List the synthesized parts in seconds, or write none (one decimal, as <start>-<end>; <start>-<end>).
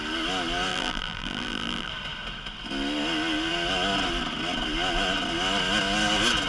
0.7-1.9